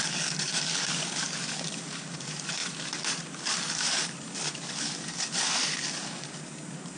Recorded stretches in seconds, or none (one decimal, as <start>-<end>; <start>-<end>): none